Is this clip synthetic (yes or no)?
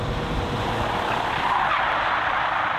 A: no